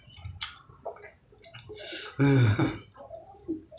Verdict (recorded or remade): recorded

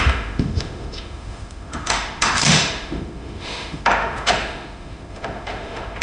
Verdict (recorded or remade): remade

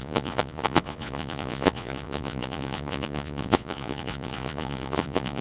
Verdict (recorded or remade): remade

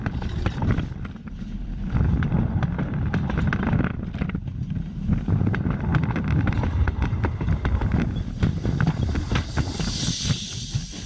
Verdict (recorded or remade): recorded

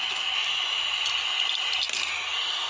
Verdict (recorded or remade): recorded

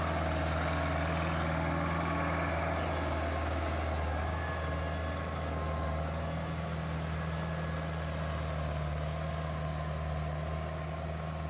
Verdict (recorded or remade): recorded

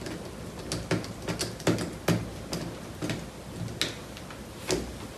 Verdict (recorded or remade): recorded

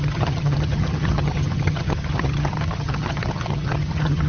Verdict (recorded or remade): remade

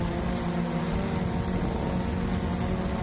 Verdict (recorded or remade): recorded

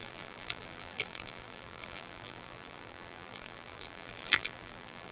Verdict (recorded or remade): remade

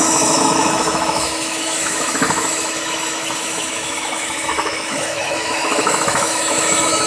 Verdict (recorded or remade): remade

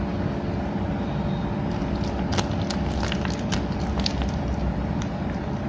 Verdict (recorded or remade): recorded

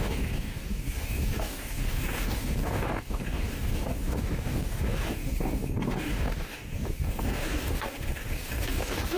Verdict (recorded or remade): remade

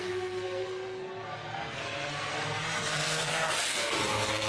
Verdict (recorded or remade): remade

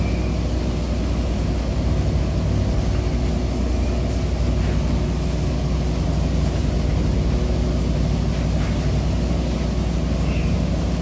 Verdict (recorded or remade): recorded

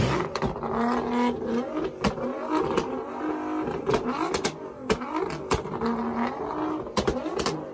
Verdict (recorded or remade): recorded